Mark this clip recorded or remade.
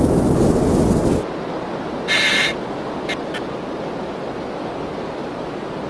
recorded